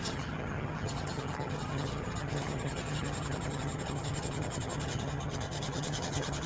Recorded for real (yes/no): no